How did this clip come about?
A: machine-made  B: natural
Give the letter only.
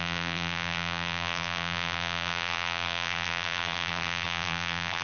A